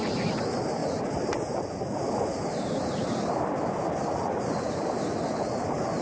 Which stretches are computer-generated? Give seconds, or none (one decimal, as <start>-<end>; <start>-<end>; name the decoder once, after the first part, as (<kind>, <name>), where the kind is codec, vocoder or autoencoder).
none